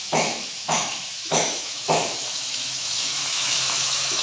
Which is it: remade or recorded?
remade